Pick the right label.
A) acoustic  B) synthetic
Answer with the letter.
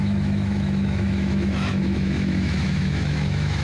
B